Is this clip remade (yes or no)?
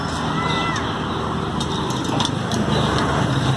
no